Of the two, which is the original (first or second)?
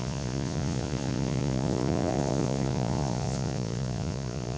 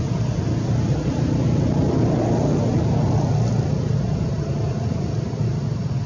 second